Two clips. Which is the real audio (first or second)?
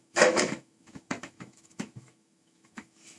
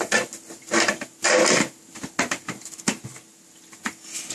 second